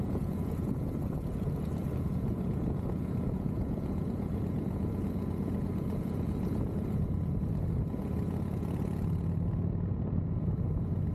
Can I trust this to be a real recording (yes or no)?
no